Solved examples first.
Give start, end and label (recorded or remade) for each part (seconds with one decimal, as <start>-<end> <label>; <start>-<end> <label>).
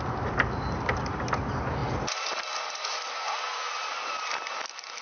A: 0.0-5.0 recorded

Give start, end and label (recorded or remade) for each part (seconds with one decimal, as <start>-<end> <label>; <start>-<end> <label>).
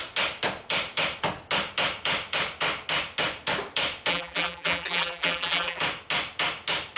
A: 0.0-4.1 recorded; 4.1-5.8 remade; 5.8-7.0 recorded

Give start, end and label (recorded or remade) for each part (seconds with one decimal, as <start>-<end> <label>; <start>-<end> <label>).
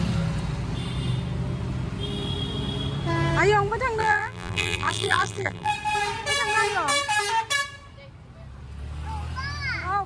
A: 0.0-4.0 recorded; 4.0-5.7 remade; 5.7-10.1 recorded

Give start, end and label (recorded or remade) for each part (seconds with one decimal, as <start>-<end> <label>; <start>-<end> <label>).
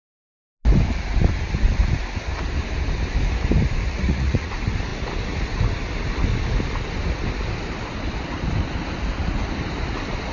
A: 0.0-3.9 recorded; 3.9-4.5 remade; 4.5-10.3 recorded